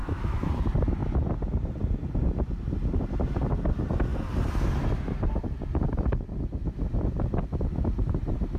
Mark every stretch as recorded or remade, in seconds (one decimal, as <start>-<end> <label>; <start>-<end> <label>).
0.0-0.5 remade; 0.5-8.6 recorded